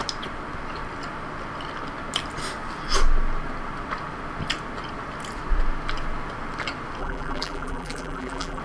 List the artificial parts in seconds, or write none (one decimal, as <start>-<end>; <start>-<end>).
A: 7.0-8.6